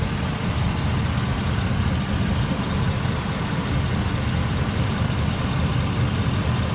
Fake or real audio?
real